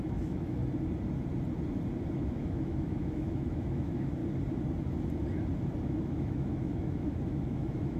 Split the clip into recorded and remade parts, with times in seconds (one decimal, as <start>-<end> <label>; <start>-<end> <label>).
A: 0.0-0.6 remade; 0.6-2.1 recorded; 2.1-4.2 remade; 4.2-5.8 recorded; 5.8-8.0 remade